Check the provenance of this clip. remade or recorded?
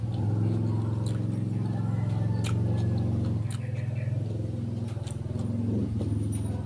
recorded